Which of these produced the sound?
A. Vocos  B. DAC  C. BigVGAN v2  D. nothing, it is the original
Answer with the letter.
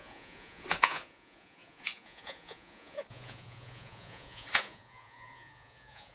A